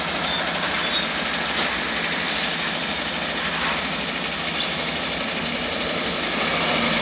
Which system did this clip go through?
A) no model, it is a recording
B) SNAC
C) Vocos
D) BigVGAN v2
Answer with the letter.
A